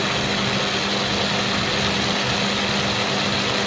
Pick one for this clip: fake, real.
real